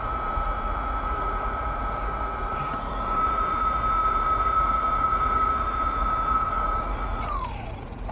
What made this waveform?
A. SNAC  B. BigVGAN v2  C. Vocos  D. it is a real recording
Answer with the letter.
C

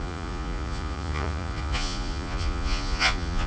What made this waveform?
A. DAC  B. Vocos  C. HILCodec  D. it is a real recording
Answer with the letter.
B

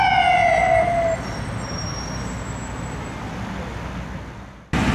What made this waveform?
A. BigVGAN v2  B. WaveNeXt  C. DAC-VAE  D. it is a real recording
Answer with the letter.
D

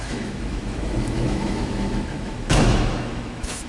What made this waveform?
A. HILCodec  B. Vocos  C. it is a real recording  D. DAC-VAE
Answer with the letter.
D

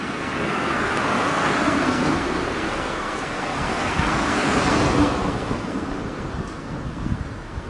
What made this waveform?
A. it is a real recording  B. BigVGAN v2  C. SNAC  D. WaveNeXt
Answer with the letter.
C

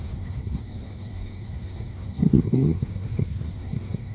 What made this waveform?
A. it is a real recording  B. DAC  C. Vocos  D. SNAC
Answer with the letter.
D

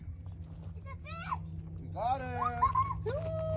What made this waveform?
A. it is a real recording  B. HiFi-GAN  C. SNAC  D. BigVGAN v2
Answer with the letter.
A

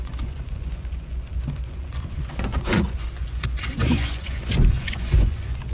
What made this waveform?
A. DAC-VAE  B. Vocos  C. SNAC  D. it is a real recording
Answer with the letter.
B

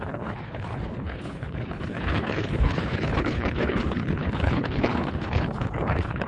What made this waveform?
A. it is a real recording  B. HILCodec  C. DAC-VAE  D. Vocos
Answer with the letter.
B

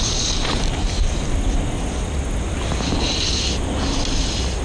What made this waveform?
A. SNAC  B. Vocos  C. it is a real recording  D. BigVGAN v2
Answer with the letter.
C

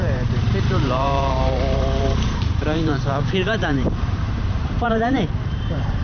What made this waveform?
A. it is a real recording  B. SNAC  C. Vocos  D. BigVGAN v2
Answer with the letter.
D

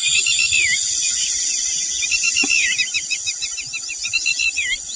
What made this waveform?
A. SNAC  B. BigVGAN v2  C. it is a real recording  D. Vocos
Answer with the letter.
C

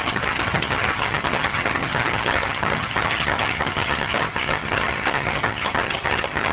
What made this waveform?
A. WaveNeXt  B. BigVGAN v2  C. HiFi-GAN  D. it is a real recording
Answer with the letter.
C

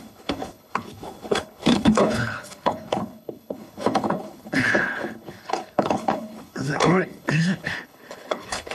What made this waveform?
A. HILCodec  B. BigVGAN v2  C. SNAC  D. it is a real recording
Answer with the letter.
A